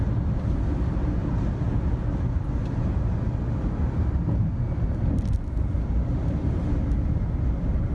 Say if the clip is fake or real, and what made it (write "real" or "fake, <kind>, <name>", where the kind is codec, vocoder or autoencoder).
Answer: real